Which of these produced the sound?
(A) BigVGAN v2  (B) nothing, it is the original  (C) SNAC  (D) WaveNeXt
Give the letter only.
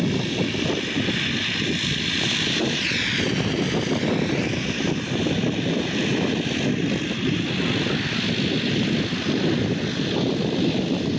B